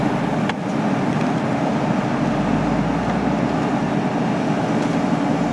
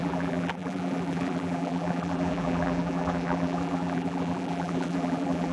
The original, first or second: first